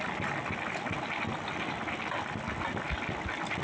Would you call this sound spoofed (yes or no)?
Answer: no